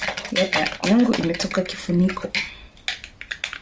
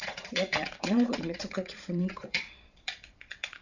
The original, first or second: first